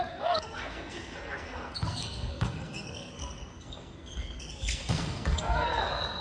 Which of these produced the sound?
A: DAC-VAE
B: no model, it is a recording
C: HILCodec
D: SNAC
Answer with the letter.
D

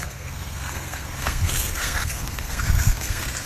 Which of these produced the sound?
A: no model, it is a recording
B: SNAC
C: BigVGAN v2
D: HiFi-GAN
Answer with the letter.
B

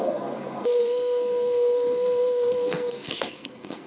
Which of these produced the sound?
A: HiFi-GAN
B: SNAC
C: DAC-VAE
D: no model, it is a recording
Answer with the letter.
B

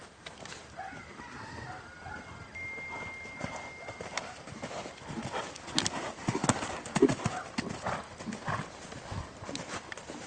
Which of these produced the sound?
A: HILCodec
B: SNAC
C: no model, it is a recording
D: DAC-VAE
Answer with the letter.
C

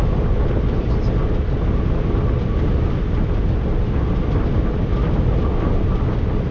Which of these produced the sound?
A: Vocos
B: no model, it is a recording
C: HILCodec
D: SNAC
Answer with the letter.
B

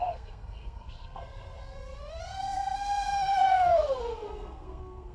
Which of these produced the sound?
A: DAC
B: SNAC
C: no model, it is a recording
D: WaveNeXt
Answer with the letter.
B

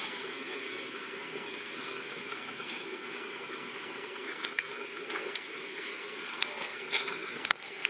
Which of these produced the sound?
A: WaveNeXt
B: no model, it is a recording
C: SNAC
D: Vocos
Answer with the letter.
C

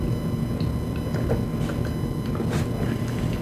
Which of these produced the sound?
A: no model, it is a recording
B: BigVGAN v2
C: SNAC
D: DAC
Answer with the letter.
A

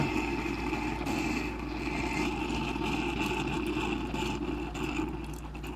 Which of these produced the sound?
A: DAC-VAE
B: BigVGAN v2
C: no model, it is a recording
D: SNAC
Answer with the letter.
C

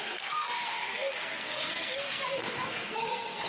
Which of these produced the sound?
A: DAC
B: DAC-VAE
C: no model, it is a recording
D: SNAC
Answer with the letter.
D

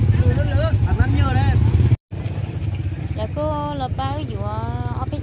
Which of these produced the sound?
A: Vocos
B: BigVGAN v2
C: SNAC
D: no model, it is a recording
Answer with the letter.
D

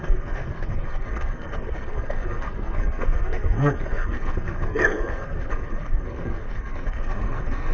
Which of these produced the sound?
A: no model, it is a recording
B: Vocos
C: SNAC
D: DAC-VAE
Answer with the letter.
C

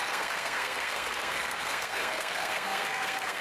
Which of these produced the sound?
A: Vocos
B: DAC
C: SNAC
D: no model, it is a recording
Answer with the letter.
C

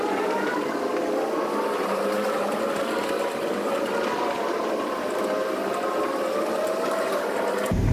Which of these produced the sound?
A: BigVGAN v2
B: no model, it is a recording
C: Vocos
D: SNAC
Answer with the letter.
B